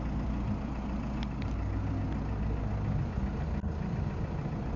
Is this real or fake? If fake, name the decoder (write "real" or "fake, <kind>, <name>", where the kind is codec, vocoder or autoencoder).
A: real